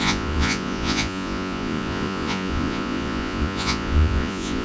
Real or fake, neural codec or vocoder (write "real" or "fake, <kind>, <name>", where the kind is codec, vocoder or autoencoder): fake, vocoder, Vocos